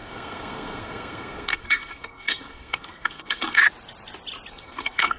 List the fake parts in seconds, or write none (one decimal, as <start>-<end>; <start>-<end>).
0.0-3.6; 4.5-5.2